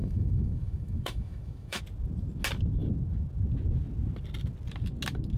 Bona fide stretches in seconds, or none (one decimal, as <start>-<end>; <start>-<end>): 1.8-5.4